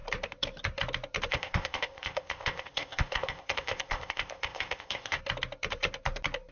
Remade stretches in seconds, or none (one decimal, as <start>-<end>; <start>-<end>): 1.3-5.2